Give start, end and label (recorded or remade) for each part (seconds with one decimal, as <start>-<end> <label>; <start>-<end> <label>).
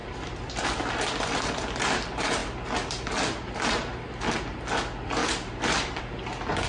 0.0-1.6 remade; 1.6-5.2 recorded; 5.2-6.0 remade; 6.0-6.7 recorded